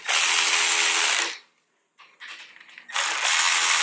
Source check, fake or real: real